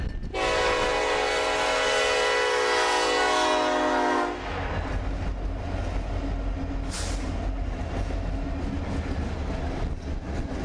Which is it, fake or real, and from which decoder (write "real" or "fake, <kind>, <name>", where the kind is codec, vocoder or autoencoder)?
real